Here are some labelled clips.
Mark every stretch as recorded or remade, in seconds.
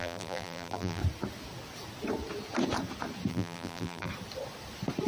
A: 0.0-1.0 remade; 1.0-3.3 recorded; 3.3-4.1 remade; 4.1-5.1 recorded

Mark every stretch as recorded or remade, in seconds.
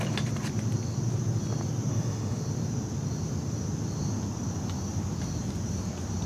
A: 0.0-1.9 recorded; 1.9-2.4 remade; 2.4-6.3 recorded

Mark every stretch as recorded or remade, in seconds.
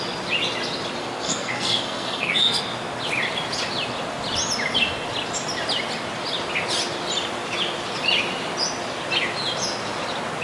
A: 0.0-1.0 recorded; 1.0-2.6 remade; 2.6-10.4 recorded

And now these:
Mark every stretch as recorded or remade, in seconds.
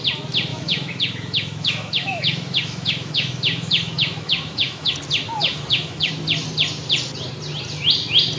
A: 0.0-0.5 recorded; 0.5-4.9 remade; 4.9-5.4 recorded; 5.4-6.1 remade; 6.1-8.4 recorded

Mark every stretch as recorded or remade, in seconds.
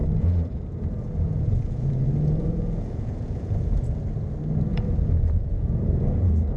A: 0.0-4.0 remade; 4.0-4.7 recorded; 4.7-6.6 remade